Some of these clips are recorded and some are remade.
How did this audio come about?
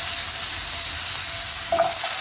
recorded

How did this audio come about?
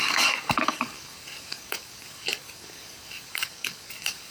remade